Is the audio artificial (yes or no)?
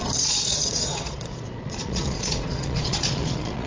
yes